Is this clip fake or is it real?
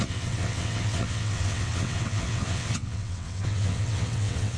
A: fake